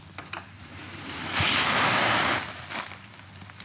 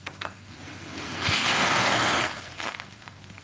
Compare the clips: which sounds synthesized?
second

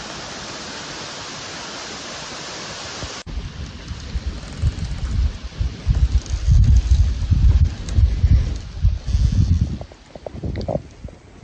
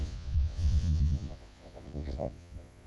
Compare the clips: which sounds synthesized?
second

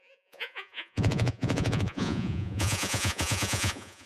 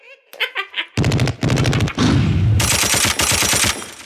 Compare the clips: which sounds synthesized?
first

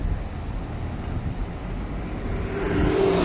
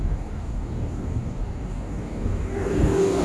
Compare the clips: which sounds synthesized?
second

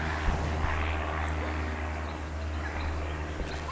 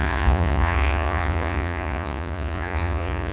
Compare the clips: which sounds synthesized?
second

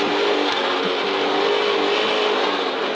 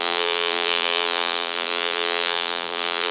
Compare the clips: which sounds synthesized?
second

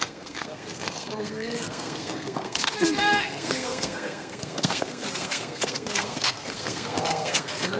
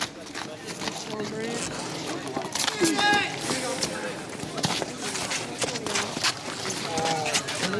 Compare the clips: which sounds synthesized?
first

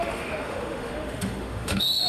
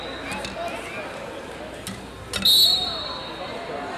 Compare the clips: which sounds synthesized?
first